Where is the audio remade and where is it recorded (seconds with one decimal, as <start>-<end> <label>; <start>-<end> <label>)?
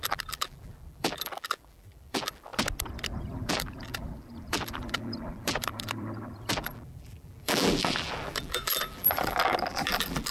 0.0-2.5 remade; 2.5-3.2 recorded; 3.2-10.3 remade